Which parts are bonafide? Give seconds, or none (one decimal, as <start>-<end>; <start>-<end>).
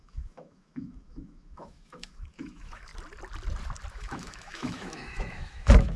2.9-3.9